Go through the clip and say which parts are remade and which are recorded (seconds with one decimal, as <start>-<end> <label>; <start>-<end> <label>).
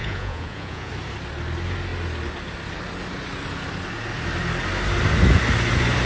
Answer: 0.0-0.9 remade; 0.9-6.1 recorded